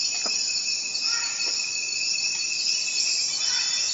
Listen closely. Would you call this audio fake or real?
real